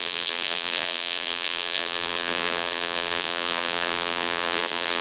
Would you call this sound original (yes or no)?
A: no